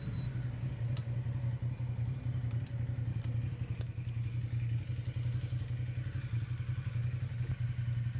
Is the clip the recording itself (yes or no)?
yes